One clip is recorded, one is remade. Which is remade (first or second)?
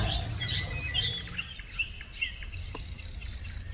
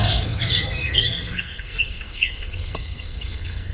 second